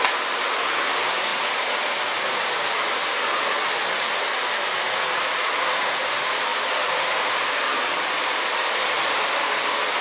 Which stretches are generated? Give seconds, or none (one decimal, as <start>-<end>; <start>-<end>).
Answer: 1.3-4.2; 6.5-9.6